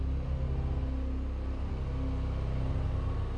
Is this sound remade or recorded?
recorded